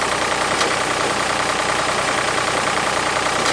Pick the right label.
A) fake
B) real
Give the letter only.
A